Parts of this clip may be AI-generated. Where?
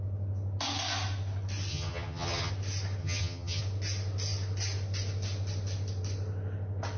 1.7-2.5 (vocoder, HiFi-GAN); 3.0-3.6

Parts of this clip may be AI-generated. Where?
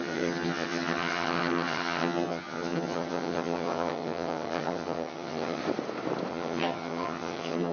0.0-5.6 (vocoder, HiFi-GAN); 6.3-7.7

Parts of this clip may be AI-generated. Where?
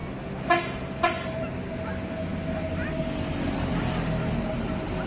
none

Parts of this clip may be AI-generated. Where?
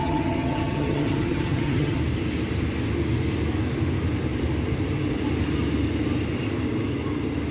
0.0-2.0 (vocoder, HiFi-GAN)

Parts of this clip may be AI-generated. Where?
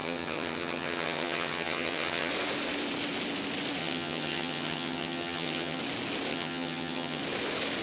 0.0-2.3 (vocoder, HiFi-GAN); 3.8-5.8; 6.3-7.2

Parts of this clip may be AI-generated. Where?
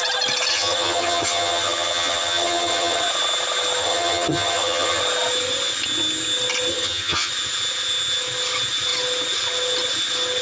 0.5-3.0 (vocoder, HiFi-GAN); 3.8-5.0; 6.7-7.3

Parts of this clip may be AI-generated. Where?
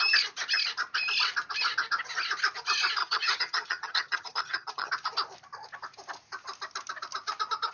3.0-4.9 (vocoder, HiFi-GAN)